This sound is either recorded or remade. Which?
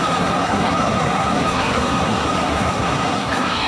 remade